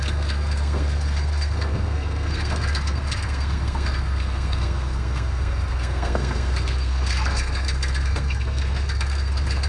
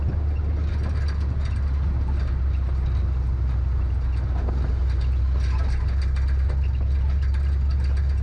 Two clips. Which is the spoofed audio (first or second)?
first